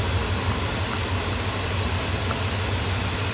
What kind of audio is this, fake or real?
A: real